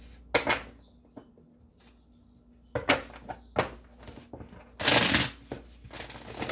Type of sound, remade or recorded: recorded